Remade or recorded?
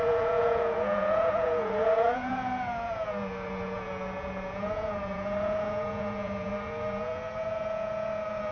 remade